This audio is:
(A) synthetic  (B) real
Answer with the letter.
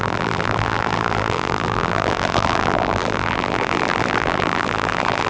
A